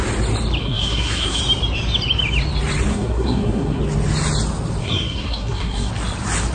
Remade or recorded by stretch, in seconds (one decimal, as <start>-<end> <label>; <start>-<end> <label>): 0.0-0.6 recorded; 0.6-1.4 remade; 1.4-2.9 recorded; 2.9-3.8 remade; 3.8-4.8 recorded; 4.8-5.9 remade; 5.9-6.5 recorded